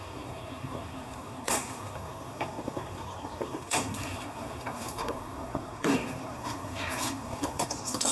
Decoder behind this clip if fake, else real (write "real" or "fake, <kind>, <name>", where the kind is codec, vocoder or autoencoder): fake, codec, SNAC